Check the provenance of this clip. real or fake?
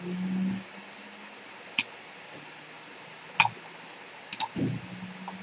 real